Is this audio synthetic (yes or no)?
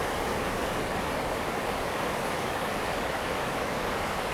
yes